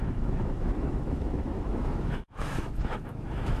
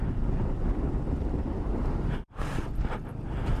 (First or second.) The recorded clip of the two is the second